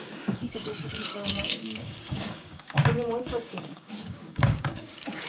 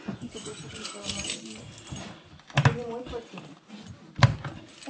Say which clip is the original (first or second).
second